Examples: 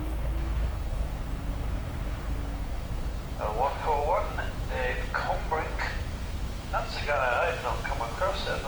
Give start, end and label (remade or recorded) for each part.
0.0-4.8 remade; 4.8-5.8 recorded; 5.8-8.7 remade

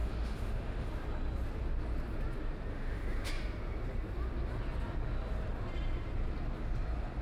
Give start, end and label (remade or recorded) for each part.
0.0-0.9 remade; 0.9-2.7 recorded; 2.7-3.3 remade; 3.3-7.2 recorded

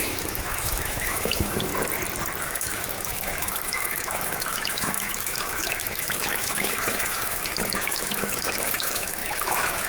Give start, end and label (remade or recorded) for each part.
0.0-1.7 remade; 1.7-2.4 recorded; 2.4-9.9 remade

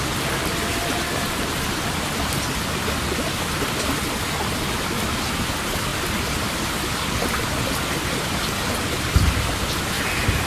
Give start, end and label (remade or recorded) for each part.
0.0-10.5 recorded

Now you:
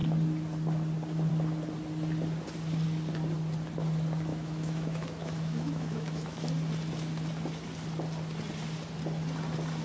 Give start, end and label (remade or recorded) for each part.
0.0-4.3 recorded; 4.3-6.5 remade; 6.5-9.8 recorded

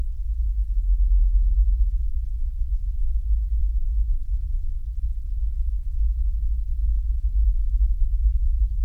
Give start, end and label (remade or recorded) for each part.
0.0-8.8 recorded